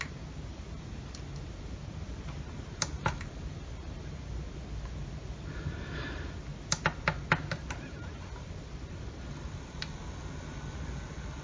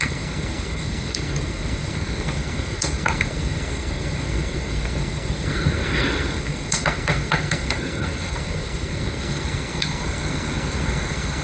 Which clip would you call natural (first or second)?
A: first